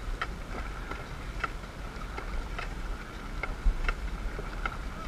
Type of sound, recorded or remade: recorded